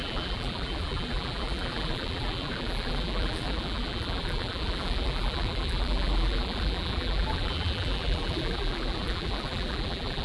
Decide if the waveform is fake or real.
fake